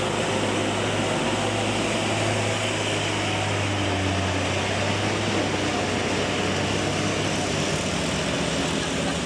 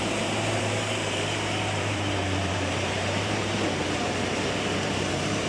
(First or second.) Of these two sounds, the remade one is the second